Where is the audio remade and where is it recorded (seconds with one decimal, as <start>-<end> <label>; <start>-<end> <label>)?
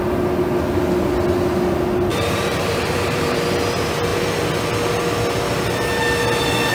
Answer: 0.0-2.1 recorded; 2.1-3.4 remade; 3.4-6.7 recorded